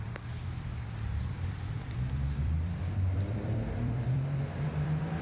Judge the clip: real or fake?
fake